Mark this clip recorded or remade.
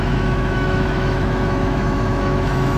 remade